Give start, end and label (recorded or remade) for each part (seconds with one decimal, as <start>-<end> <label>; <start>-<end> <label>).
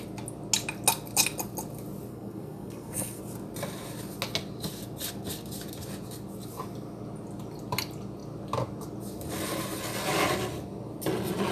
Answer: 0.0-2.1 recorded; 2.1-3.2 remade; 3.2-11.5 recorded